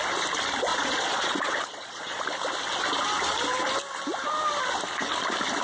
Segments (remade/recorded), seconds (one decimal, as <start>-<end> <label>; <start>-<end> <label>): 0.0-0.7 recorded; 0.7-2.2 remade; 2.2-5.6 recorded